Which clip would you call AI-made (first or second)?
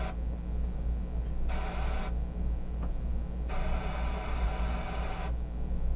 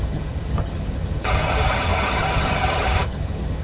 second